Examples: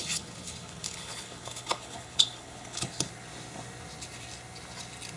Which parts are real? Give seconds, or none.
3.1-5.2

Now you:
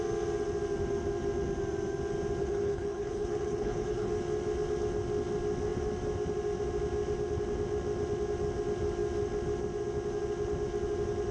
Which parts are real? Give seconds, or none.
0.0-2.4; 4.1-11.3

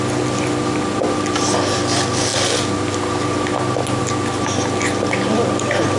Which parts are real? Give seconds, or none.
0.0-6.0